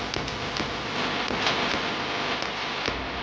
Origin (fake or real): real